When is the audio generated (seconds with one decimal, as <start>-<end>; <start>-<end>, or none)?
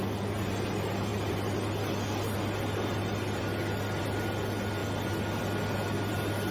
none